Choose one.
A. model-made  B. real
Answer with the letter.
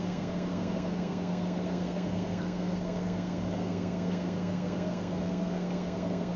A